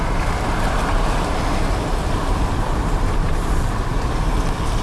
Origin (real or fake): fake